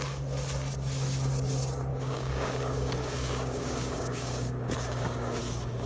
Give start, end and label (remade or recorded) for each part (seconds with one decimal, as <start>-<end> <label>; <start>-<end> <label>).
0.0-1.9 recorded; 1.9-5.4 remade; 5.4-5.9 recorded